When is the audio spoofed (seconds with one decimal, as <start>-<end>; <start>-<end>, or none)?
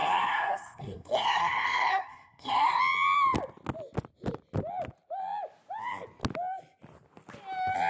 0.0-2.8